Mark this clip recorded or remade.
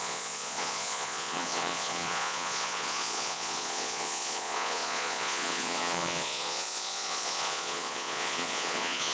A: remade